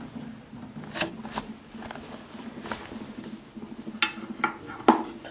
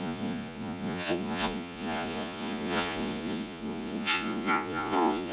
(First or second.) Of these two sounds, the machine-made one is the second